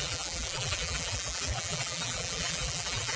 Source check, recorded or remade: remade